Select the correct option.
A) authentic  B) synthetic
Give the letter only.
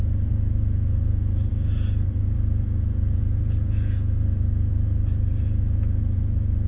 B